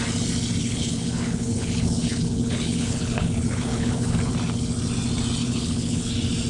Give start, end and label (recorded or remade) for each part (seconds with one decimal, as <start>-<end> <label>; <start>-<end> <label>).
0.0-0.6 recorded; 0.6-4.3 remade; 4.3-5.4 recorded; 5.4-6.1 remade; 6.1-6.5 recorded